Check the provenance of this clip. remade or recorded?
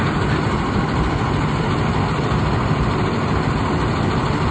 recorded